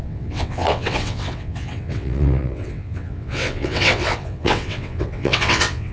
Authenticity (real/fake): fake